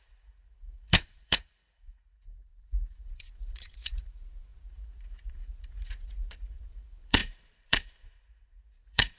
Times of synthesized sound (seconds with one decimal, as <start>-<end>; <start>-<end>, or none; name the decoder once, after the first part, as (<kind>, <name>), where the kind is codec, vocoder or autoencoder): 0.0-9.2 (vocoder, Vocos)